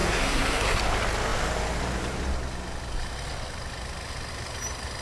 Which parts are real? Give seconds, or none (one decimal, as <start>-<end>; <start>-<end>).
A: 0.8-5.0